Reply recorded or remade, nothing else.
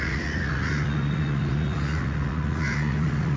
remade